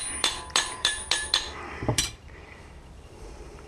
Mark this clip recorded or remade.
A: remade